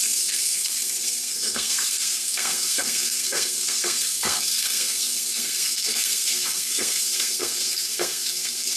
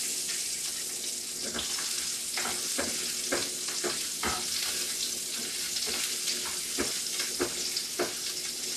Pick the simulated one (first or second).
first